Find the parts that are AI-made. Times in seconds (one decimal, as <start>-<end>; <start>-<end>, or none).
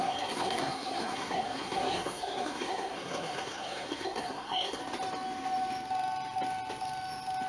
0.0-4.8